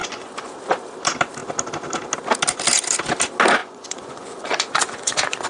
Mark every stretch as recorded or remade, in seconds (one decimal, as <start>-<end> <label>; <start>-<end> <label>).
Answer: 0.0-0.5 remade; 0.5-3.6 recorded; 3.6-5.5 remade